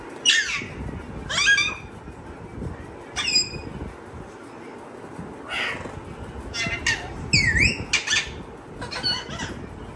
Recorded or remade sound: recorded